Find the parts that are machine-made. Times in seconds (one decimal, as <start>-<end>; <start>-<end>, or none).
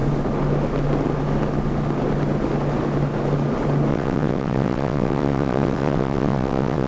3.9-6.9